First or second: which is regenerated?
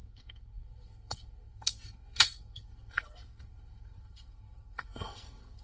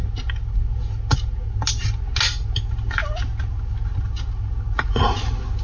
first